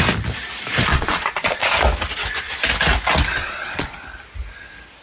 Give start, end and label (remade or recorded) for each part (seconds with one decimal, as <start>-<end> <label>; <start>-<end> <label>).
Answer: 0.0-0.9 recorded; 0.9-1.7 remade; 1.7-3.3 recorded; 3.3-4.0 remade; 4.0-5.0 recorded